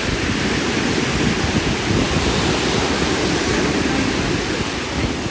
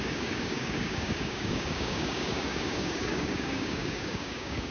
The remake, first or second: second